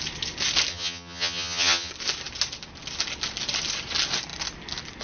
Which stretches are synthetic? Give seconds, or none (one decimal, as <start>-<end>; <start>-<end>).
0.7-1.9